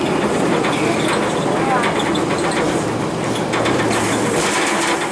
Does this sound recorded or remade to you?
remade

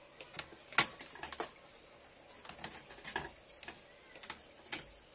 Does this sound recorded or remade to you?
recorded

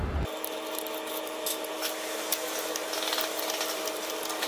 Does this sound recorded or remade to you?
recorded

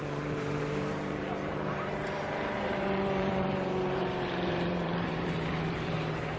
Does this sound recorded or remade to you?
remade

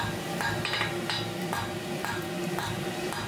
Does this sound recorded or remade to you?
remade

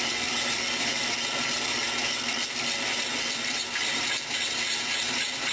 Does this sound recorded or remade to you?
recorded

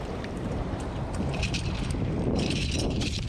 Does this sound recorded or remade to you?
remade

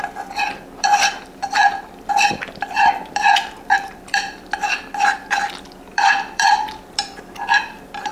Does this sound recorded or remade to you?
remade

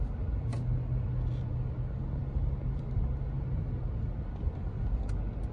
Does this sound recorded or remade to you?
recorded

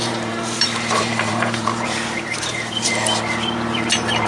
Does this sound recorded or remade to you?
remade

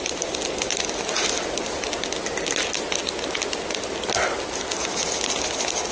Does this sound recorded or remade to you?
recorded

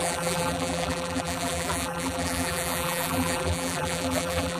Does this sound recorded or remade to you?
remade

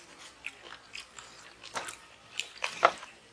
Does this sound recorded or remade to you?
remade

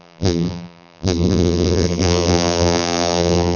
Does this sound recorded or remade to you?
remade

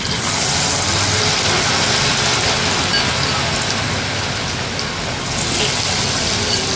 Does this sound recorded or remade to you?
recorded